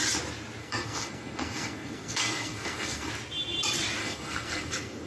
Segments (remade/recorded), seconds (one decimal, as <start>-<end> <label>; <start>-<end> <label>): 0.0-0.6 recorded; 0.6-3.1 remade; 3.1-4.0 recorded; 4.0-5.1 remade

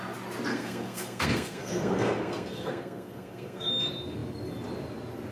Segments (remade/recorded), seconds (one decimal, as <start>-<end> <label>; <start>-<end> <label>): 0.0-0.5 recorded; 0.5-3.7 remade; 3.7-5.3 recorded

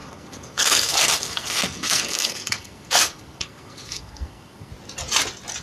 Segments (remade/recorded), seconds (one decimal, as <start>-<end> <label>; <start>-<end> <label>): 0.0-4.7 remade; 4.7-5.6 recorded

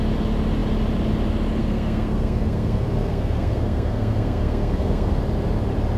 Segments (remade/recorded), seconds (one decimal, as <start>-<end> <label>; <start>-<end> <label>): 0.0-1.6 recorded; 1.6-5.2 remade; 5.2-6.0 recorded

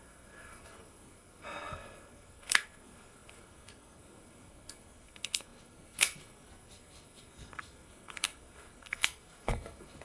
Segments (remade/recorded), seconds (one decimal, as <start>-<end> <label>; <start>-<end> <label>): 0.0-10.0 remade

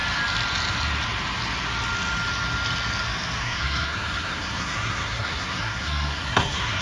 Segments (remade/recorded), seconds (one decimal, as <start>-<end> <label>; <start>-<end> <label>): 0.0-3.4 recorded; 3.4-6.8 remade

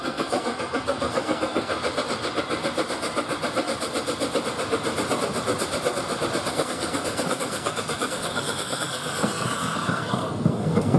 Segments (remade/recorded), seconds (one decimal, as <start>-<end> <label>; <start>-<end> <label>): 0.0-1.7 remade; 1.7-6.5 recorded; 6.5-11.0 remade

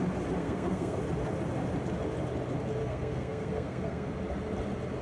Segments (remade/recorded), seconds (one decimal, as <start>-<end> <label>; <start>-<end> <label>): 0.0-0.4 recorded; 0.4-1.0 remade; 1.0-2.8 recorded; 2.8-4.1 remade; 4.1-5.0 recorded